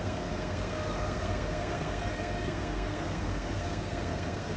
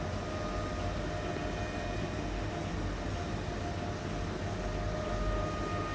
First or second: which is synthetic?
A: first